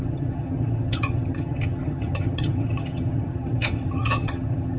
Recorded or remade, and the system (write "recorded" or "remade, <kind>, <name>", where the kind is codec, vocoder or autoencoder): remade, vocoder, HiFi-GAN